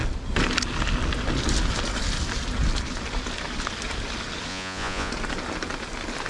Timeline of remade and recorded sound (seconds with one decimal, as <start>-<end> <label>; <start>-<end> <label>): 0.0-4.5 recorded; 4.5-5.1 remade; 5.1-6.3 recorded